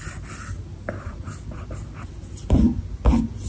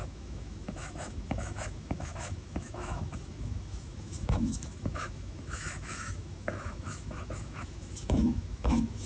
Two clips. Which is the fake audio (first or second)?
second